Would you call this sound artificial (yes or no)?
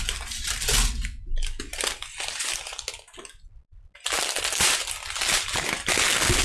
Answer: no